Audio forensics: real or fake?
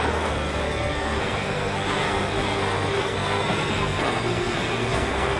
fake